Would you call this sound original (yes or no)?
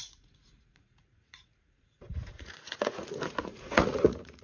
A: no